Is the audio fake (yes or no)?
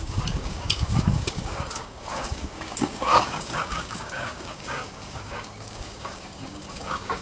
yes